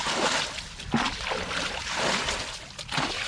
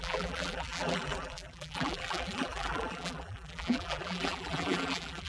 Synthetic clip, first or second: second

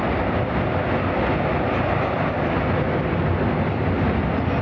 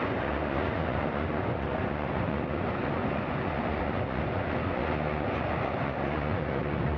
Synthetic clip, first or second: second